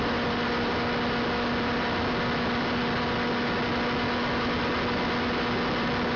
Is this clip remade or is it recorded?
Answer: recorded